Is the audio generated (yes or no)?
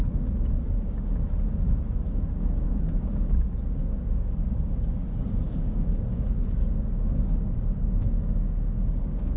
yes